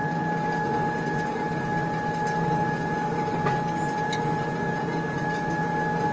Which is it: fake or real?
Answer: real